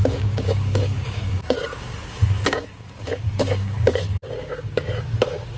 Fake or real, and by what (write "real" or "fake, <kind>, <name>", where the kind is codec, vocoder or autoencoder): fake, codec, DAC